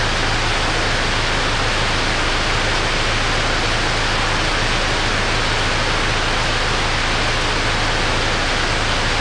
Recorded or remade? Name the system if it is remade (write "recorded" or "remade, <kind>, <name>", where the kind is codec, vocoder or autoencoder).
recorded